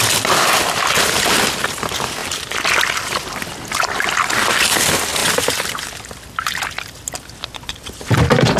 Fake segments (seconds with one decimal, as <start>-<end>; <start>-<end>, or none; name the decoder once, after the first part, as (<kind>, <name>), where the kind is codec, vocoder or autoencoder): 2.2-4.8 (vocoder, BigVGAN v2); 5.2-8.2